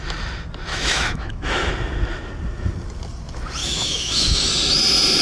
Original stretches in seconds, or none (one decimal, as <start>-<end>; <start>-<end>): 0.0-0.7; 1.7-3.6; 4.5-5.2